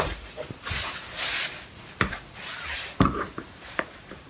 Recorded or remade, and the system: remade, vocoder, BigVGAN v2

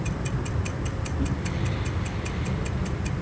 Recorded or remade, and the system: recorded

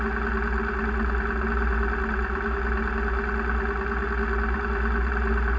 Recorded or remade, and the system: recorded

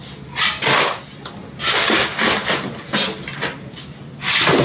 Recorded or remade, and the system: recorded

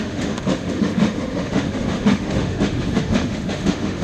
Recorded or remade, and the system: remade, autoencoder, DAC-VAE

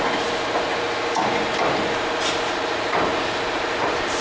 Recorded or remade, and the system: recorded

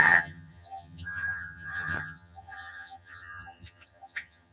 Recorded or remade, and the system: remade, vocoder, HiFi-GAN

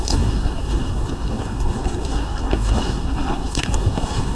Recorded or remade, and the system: remade, codec, SNAC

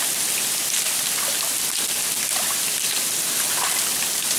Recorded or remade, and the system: recorded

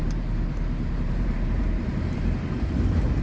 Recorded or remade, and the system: remade, vocoder, BigVGAN v2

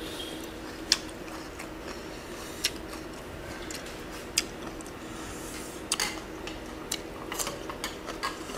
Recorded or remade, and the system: recorded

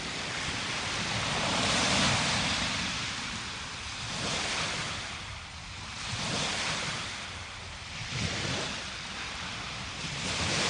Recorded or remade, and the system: recorded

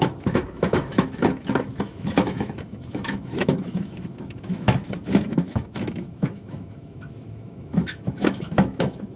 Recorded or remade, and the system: remade, autoencoder, DAC-VAE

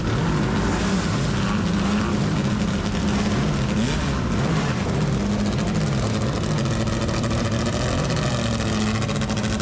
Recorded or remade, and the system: recorded